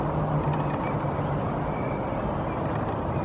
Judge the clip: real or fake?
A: real